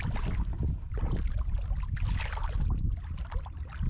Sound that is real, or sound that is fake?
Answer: real